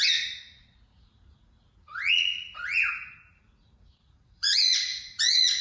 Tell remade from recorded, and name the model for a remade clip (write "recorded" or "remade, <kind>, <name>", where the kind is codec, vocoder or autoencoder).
remade, vocoder, Vocos